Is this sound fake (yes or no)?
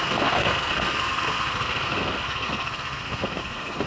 yes